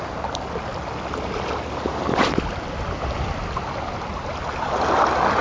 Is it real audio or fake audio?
real